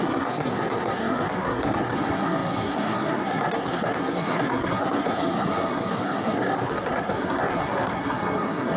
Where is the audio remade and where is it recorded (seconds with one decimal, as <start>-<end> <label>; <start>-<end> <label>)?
0.0-8.8 remade